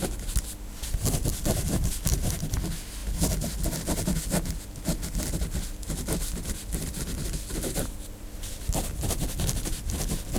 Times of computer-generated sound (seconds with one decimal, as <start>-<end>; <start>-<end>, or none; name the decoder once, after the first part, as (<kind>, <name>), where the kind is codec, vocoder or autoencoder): none